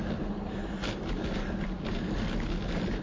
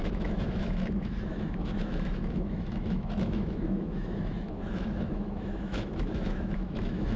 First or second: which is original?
first